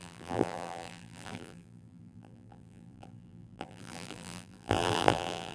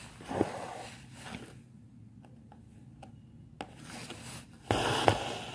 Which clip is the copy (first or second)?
first